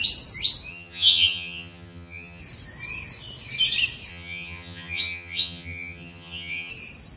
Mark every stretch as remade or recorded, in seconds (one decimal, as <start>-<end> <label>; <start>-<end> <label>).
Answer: 0.0-0.7 recorded; 0.7-2.4 remade; 2.4-4.1 recorded; 4.1-6.7 remade; 6.7-7.2 recorded